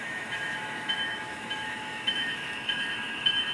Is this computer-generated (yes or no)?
yes